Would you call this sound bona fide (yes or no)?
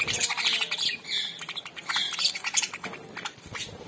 yes